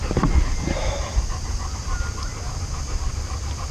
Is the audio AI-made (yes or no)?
no